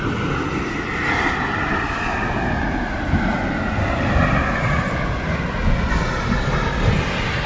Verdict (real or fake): real